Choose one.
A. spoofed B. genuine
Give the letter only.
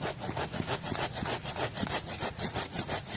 A